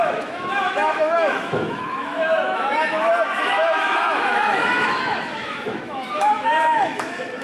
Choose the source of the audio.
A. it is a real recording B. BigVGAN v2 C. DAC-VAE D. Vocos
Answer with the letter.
C